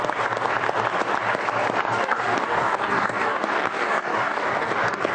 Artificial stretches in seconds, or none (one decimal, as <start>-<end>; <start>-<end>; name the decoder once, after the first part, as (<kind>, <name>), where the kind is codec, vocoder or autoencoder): 1.8-5.1 (codec, DAC)